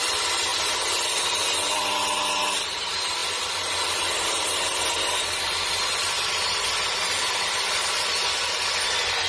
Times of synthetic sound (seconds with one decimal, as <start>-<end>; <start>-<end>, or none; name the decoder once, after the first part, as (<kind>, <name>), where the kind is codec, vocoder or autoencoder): none